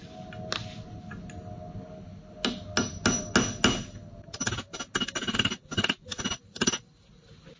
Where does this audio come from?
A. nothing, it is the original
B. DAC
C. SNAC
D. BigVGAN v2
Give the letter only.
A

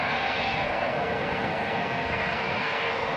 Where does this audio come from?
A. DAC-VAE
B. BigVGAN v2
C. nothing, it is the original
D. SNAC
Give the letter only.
D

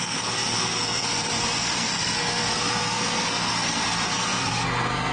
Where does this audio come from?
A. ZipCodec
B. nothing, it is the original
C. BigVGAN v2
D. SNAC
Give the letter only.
D